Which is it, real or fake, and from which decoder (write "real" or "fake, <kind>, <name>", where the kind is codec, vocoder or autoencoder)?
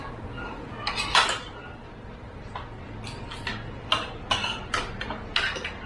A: real